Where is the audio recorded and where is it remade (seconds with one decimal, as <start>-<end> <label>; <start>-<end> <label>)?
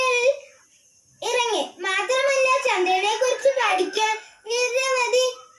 0.0-3.4 recorded; 3.4-4.7 remade; 4.7-5.6 recorded